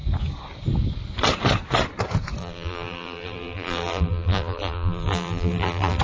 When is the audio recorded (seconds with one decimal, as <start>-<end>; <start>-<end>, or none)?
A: 0.0-2.4